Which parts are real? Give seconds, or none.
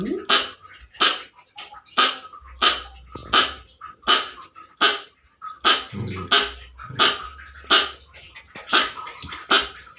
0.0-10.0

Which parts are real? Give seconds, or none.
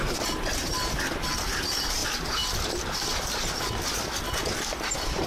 0.0-5.3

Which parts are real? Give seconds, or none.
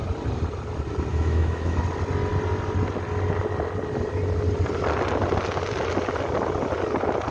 0.0-1.1; 1.8-7.3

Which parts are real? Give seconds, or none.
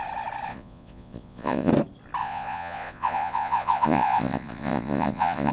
0.0-0.5; 1.7-2.2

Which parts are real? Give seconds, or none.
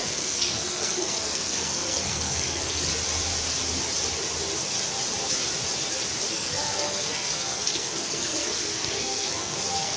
2.9-6.3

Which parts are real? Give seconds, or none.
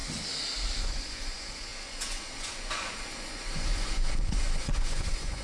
0.0-0.8